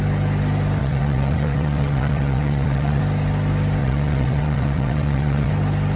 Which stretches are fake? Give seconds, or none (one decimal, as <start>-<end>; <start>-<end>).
0.8-3.0; 3.8-5.5